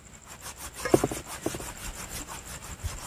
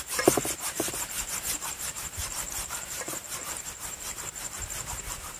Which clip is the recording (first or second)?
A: first